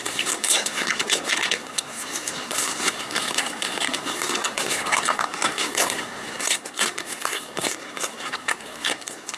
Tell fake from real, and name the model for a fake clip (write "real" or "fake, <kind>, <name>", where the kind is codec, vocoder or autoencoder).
fake, codec, SNAC